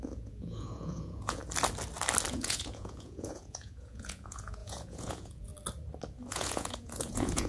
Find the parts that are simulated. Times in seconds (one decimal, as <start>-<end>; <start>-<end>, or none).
0.0-1.4; 2.3-5.5; 6.3-7.5